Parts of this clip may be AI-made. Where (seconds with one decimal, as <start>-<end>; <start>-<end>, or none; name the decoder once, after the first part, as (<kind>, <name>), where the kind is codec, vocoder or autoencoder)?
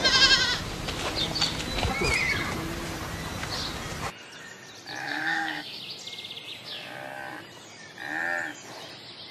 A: 5.0-5.8 (codec, SNAC)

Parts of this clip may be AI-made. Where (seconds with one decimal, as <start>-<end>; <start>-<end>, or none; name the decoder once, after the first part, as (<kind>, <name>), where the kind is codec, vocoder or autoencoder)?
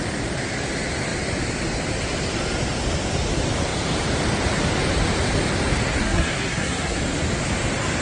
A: 6.0-7.0 (codec, SNAC)